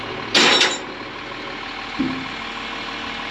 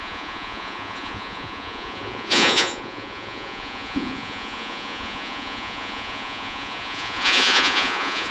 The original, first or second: first